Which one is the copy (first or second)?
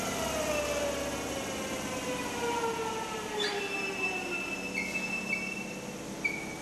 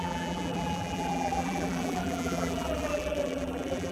second